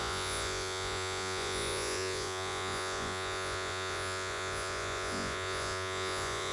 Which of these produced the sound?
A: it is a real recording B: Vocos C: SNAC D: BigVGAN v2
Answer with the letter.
B